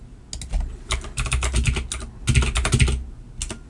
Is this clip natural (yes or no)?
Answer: yes